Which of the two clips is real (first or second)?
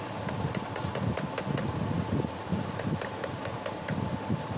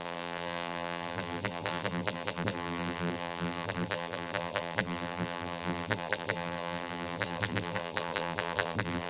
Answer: first